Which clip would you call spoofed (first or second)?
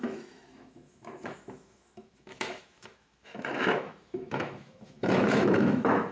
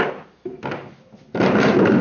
first